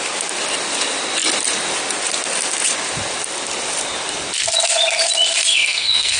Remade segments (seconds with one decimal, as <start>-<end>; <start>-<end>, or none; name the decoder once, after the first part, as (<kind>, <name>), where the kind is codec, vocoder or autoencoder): 5.5-6.2 (codec, SNAC)